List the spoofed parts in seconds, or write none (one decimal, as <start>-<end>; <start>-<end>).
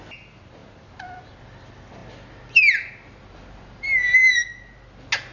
none